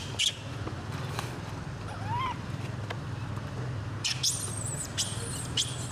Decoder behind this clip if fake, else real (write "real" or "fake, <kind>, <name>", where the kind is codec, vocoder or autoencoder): real